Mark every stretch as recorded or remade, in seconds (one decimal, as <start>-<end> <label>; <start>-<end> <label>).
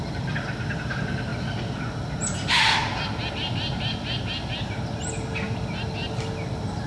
0.0-6.9 recorded